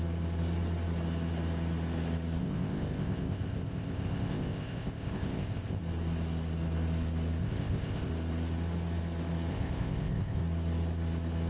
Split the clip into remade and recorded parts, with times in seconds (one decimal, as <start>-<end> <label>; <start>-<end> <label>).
0.0-2.4 recorded; 2.4-5.8 remade; 5.8-7.4 recorded; 7.4-8.1 remade; 8.1-9.5 recorded; 9.5-10.4 remade; 10.4-11.5 recorded